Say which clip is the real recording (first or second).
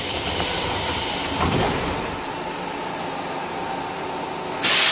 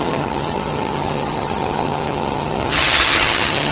first